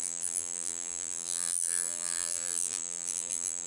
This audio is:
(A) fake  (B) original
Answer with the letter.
A